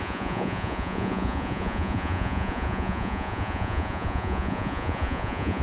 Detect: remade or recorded remade